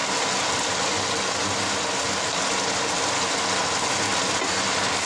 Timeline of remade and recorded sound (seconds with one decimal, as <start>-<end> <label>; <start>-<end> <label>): 0.0-5.0 recorded